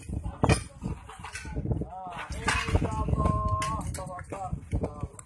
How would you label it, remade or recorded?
recorded